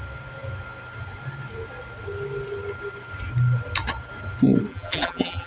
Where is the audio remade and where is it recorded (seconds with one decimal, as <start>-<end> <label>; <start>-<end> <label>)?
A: 0.0-4.7 recorded; 4.7-5.5 remade